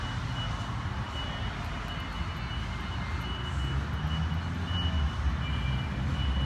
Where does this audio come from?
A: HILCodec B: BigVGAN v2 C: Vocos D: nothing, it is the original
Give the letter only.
D